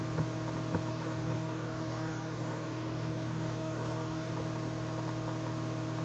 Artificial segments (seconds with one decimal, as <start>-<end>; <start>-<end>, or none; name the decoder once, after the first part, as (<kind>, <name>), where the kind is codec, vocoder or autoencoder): 0.9-4.3 (codec, DAC)